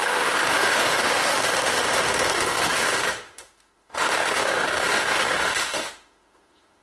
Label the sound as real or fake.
fake